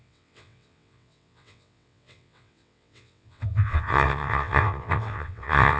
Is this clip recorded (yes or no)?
no